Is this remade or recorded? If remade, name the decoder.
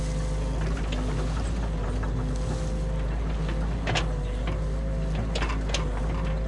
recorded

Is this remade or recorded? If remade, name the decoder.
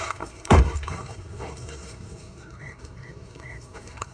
remade, codec, SNAC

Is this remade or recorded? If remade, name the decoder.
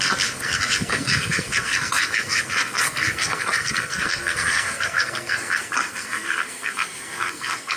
remade, codec, SNAC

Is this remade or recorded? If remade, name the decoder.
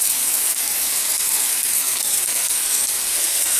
remade, codec, SNAC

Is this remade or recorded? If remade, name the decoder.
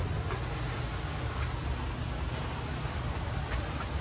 recorded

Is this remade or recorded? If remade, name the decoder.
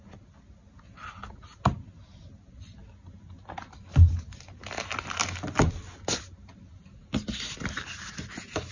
recorded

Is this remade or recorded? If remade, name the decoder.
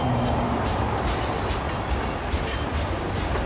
recorded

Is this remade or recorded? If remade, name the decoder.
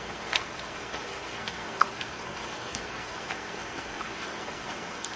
remade, codec, SNAC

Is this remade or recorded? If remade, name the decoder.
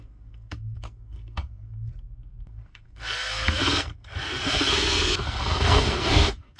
remade, codec, SNAC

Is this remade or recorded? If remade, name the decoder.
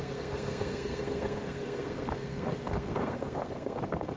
remade, codec, SNAC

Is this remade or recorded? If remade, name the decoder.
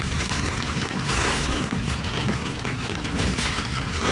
remade, codec, SNAC